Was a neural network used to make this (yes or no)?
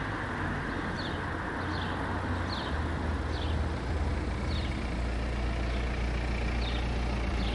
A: no